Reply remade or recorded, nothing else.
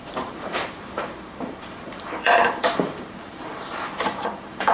remade